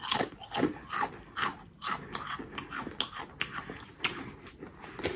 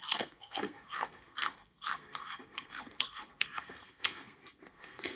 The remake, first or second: second